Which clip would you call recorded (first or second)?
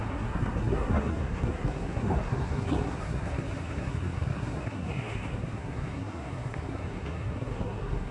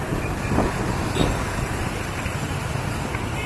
second